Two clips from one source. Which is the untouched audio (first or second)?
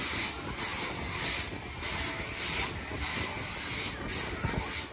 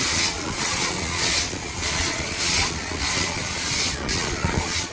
first